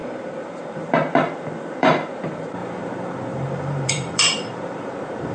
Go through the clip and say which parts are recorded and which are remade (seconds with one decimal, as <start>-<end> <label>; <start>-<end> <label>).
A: 0.0-5.3 remade